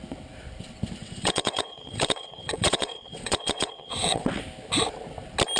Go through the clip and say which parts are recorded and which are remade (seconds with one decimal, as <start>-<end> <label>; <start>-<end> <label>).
0.0-1.0 recorded; 1.0-4.4 remade; 4.4-5.6 recorded